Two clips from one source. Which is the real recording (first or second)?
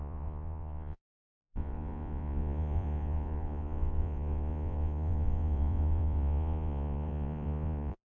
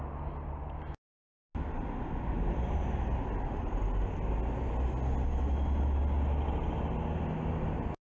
second